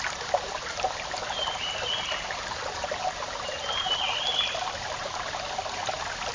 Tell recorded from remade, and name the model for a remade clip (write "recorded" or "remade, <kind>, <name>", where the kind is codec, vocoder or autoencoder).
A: recorded